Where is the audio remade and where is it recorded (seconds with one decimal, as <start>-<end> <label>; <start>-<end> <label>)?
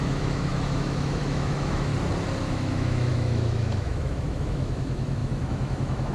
0.0-1.9 remade; 1.9-2.4 recorded; 2.4-6.1 remade